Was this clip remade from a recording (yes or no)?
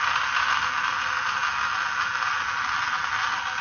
no